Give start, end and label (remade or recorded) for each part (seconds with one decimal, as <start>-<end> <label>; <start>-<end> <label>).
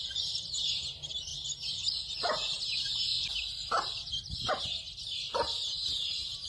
0.0-1.3 remade; 1.3-2.0 recorded; 2.0-3.1 remade; 3.1-4.5 recorded; 4.5-6.5 remade